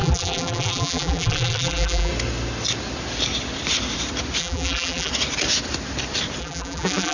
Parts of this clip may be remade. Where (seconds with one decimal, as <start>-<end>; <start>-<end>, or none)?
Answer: 0.0-2.1; 4.4-5.1; 6.4-7.1